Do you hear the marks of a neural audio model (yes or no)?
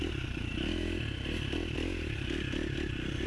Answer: no